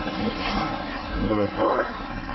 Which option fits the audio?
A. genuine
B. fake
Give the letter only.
B